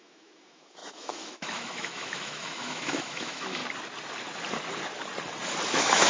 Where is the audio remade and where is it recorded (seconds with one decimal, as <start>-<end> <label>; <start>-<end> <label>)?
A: 0.0-3.6 remade; 3.6-5.6 recorded; 5.6-6.1 remade